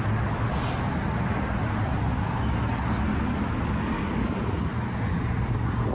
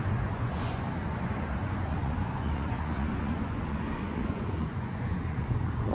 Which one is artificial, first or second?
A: second